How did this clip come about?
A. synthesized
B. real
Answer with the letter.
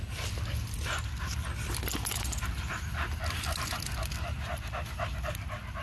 B